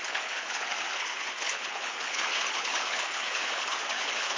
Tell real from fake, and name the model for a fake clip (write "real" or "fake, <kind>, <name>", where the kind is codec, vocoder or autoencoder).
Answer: fake, codec, HILCodec